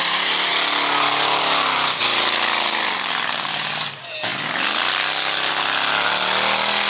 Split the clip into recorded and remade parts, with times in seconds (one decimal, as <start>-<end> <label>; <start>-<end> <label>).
0.0-0.5 remade; 0.5-1.4 recorded; 1.4-4.3 remade; 4.3-5.5 recorded; 5.5-6.9 remade